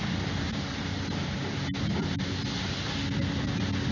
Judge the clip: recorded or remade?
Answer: recorded